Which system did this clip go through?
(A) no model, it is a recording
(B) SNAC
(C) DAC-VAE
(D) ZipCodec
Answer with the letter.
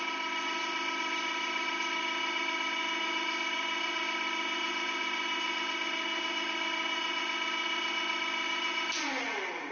A